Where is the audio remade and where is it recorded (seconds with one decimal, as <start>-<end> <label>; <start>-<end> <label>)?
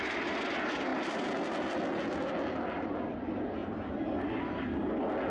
0.0-5.3 recorded